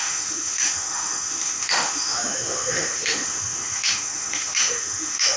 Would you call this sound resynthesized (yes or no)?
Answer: yes